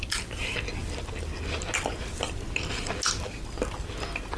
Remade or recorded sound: recorded